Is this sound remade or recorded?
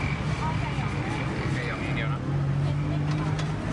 recorded